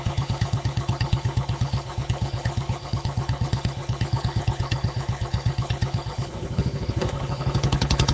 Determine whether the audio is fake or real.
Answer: fake